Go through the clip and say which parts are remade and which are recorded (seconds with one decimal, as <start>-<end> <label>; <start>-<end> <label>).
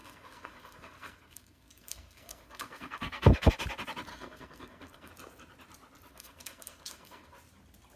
0.0-3.5 remade; 3.5-4.1 recorded; 4.1-5.1 remade; 5.1-6.1 recorded; 6.1-7.3 remade; 7.3-8.0 recorded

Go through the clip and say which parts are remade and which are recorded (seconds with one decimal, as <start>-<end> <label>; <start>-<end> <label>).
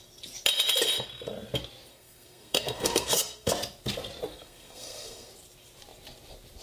0.0-1.9 recorded; 1.9-3.5 remade; 3.5-4.3 recorded; 4.3-5.3 remade; 5.3-6.6 recorded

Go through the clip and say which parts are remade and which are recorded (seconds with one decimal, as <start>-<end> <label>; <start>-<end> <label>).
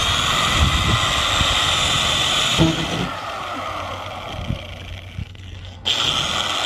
0.0-5.2 recorded; 5.2-6.1 remade; 6.1-6.7 recorded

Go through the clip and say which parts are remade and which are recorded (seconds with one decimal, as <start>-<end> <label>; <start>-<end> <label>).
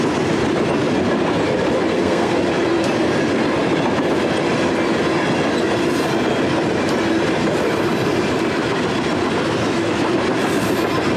0.0-1.9 recorded; 1.9-2.4 remade; 2.4-11.2 recorded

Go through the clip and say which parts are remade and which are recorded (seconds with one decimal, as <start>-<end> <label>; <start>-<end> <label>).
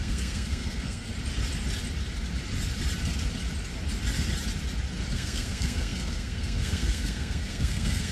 0.0-1.1 remade; 1.1-5.1 recorded; 5.1-8.1 remade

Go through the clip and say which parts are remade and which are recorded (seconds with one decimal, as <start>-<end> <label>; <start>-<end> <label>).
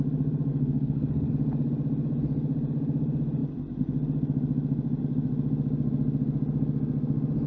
0.0-0.5 recorded; 0.5-1.3 remade; 1.3-7.5 recorded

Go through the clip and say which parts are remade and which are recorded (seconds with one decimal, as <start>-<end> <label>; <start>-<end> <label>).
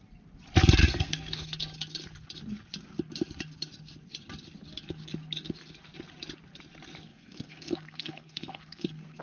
0.0-0.8 recorded; 0.8-1.6 remade; 1.6-7.1 recorded; 7.1-9.2 remade